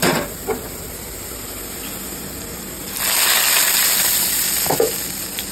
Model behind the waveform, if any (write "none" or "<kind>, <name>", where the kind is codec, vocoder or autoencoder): none